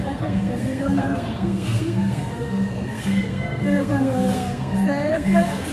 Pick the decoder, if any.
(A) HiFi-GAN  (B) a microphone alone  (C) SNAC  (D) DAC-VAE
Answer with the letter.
C